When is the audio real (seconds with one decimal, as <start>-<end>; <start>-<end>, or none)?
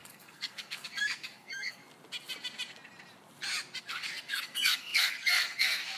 1.8-3.8